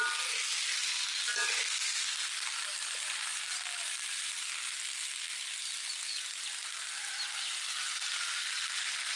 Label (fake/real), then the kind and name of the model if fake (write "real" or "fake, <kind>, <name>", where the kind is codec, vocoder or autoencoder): real